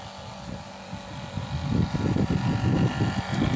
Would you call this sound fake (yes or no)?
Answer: no